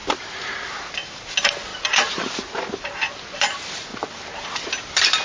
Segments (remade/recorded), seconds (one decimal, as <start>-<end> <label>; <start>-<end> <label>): 0.0-0.7 remade; 0.7-5.2 recorded